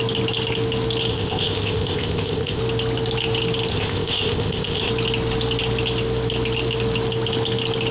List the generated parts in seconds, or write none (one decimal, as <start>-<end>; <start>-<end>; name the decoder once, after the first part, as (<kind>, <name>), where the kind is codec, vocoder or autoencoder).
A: 1.1-2.6 (codec, ZipCodec); 3.7-4.9